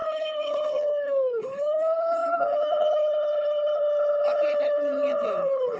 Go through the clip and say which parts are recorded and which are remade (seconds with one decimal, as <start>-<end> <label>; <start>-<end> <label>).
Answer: 0.0-5.8 remade